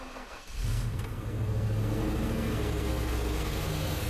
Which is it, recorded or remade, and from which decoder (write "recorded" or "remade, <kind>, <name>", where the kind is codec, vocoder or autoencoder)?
remade, codec, SNAC